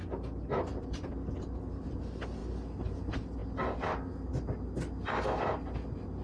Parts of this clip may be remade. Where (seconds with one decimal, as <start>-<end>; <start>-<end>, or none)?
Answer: none